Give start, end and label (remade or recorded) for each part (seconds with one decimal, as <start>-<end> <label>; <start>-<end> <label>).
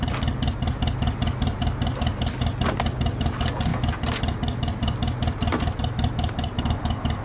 0.0-7.2 recorded